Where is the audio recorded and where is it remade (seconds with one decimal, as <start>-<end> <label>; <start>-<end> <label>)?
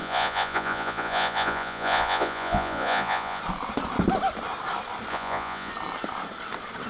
0.0-3.4 remade; 3.4-5.1 recorded; 5.1-5.7 remade; 5.7-6.9 recorded